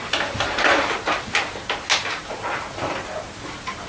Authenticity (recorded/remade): recorded